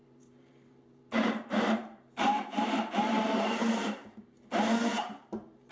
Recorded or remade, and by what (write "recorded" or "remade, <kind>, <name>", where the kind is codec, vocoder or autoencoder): remade, vocoder, BigVGAN v2